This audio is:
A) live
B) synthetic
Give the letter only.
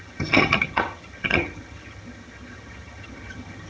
B